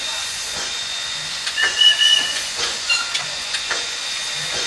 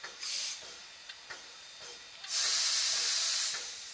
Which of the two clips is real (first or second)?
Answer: second